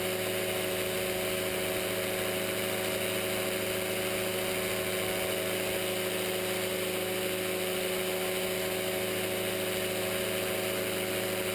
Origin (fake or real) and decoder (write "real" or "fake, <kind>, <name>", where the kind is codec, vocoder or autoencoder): real